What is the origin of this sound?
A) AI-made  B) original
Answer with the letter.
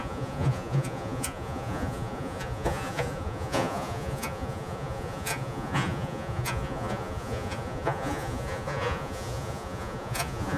A